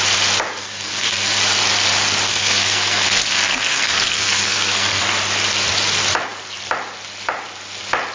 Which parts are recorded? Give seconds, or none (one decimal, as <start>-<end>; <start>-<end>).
0.0-0.6; 1.4-2.3; 5.0-8.1